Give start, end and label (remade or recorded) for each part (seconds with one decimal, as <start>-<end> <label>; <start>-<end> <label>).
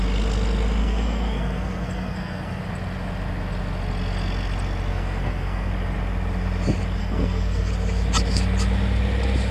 0.0-0.8 recorded; 0.8-2.6 remade; 2.6-4.9 recorded; 4.9-5.7 remade; 5.7-7.0 recorded; 7.0-7.7 remade; 7.7-9.5 recorded